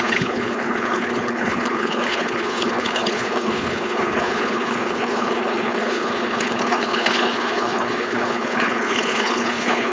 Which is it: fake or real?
fake